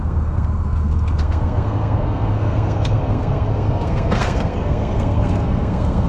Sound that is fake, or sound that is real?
fake